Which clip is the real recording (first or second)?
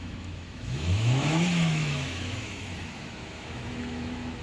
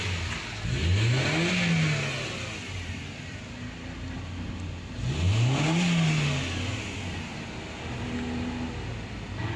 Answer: second